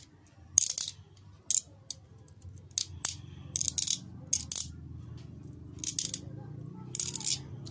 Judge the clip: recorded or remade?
recorded